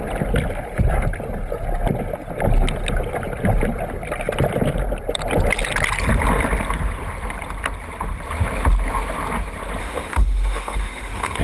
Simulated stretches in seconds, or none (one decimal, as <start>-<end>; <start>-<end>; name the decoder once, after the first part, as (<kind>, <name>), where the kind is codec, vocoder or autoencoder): 9.8-11.4 (autoencoder, DAC-VAE)